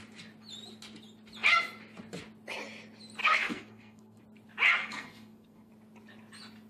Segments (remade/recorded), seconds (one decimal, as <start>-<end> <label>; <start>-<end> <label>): 0.0-3.2 recorded; 3.2-4.2 remade; 4.2-4.8 recorded; 4.8-5.7 remade; 5.7-6.7 recorded